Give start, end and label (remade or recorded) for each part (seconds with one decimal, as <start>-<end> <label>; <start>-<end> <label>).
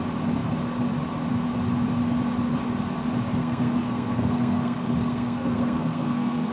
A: 0.0-3.4 recorded; 3.4-6.5 remade